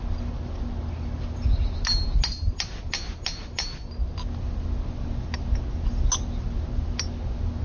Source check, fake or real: real